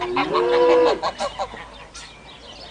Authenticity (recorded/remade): recorded